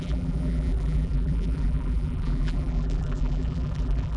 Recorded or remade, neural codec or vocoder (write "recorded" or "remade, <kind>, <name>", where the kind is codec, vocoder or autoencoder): remade, vocoder, BigVGAN v2